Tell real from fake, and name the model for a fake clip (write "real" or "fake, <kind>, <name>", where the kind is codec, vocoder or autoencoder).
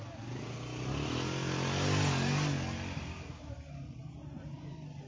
real